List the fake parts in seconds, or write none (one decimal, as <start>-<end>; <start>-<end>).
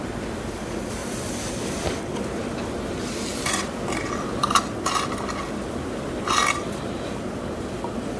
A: none